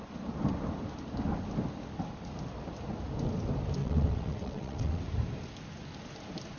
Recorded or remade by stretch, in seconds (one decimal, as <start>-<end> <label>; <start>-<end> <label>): 0.0-3.8 recorded; 3.8-5.0 remade; 5.0-6.6 recorded